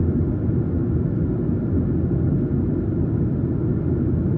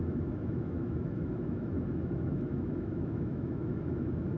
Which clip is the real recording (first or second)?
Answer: first